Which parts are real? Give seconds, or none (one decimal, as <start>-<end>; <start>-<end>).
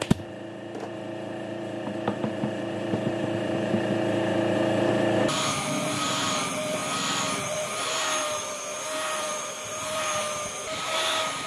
6.8-7.4